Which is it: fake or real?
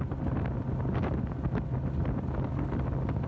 real